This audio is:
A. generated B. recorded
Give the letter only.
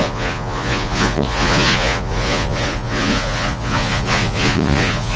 A